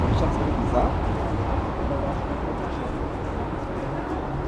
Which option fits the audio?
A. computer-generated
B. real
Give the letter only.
B